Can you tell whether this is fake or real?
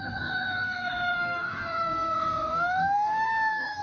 fake